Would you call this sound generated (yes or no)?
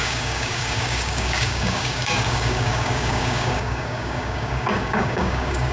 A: yes